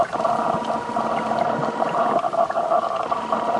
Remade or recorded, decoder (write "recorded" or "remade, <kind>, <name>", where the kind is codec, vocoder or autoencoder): recorded